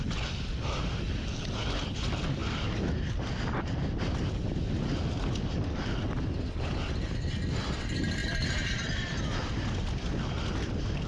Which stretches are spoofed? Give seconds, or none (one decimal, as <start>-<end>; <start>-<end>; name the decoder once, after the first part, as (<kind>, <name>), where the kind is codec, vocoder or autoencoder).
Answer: 8.2-9.2 (vocoder, BigVGAN v2)